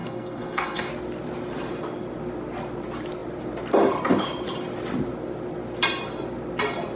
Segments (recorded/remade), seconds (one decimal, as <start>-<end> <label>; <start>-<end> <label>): 0.0-0.9 remade; 0.9-7.0 recorded